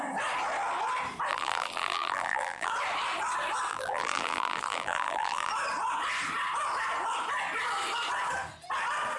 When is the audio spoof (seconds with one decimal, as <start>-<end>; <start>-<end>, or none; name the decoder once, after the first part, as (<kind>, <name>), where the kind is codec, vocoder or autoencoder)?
1.3-2.7 (vocoder, BigVGAN v2); 3.7-5.5